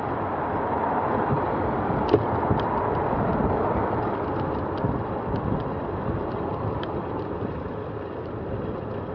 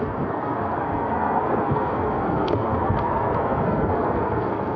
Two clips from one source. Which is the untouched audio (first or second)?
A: first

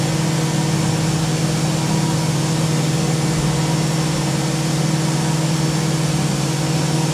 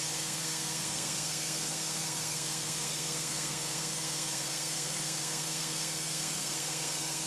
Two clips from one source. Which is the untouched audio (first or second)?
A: first